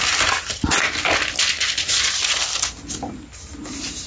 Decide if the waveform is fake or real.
real